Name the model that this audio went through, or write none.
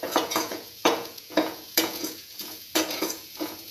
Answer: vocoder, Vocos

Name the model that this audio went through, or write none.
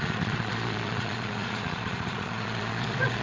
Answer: vocoder, Vocos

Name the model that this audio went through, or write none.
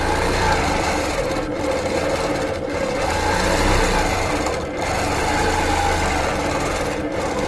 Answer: none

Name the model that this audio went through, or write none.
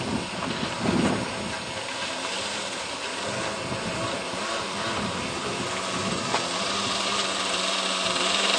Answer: none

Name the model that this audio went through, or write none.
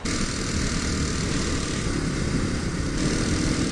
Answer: none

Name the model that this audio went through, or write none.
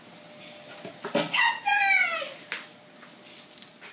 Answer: none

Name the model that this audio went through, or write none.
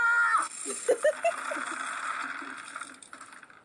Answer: none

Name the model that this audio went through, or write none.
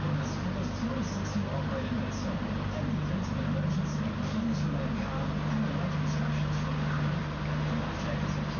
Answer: none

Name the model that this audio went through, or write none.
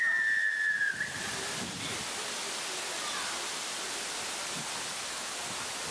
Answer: none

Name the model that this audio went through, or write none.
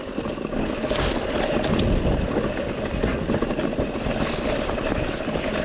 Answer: none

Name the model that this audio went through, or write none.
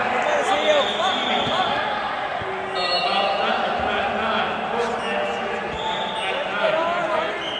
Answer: none